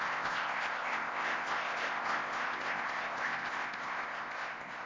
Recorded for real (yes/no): no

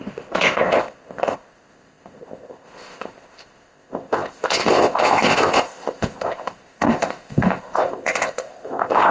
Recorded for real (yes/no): no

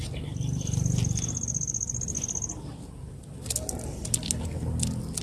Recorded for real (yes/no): yes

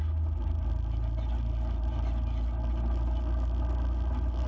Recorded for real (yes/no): yes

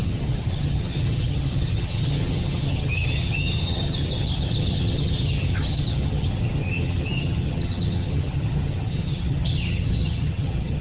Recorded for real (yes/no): no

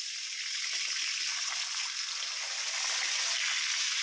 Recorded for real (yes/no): yes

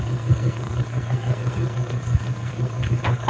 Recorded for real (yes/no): no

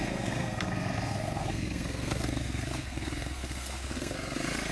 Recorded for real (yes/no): no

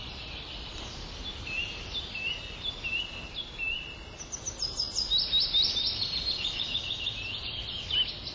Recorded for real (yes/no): yes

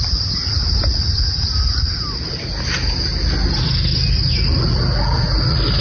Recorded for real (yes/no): yes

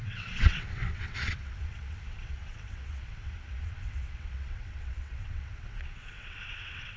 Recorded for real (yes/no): no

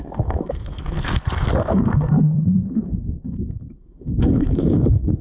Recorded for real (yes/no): no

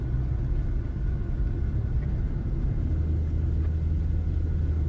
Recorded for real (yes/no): yes